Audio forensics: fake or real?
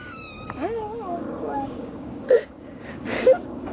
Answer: fake